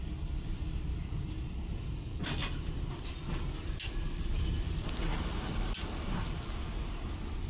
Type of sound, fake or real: real